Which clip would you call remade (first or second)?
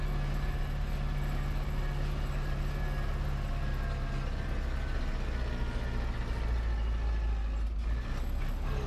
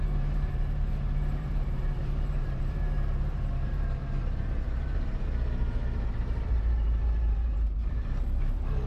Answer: second